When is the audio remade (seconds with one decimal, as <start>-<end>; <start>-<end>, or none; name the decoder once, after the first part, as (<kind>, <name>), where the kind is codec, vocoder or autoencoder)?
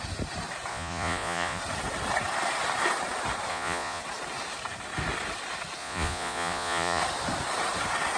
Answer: 0.7-1.6 (vocoder, Vocos); 3.5-4.0; 5.8-7.0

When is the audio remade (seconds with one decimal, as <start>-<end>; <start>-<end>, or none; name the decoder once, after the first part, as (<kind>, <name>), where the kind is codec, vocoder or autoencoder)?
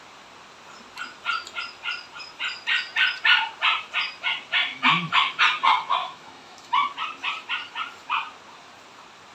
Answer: 4.7-5.4 (autoencoder, DAC-VAE); 6.0-6.9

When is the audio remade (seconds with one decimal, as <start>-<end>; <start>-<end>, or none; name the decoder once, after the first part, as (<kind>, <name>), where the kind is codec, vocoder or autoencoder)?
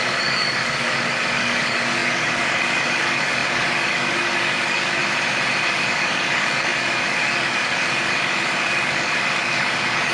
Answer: 0.0-5.0 (codec, DAC); 5.6-10.1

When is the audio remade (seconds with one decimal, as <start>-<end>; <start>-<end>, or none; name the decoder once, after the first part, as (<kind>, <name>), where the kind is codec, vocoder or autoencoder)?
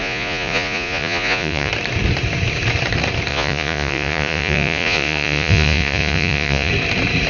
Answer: 0.0-1.7 (vocoder, Vocos); 3.3-6.7